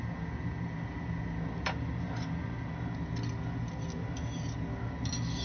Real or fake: real